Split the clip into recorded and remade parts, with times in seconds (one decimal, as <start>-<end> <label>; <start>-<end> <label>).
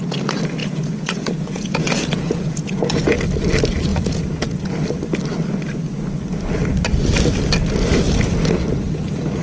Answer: 0.0-0.6 recorded; 0.6-3.2 remade; 3.2-3.9 recorded; 3.9-4.7 remade; 4.7-9.4 recorded